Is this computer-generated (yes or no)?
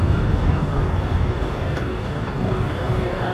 yes